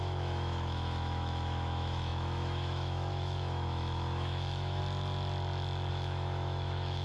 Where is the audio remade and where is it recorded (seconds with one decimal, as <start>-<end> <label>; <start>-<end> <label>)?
0.0-4.8 remade; 4.8-5.9 recorded; 5.9-7.0 remade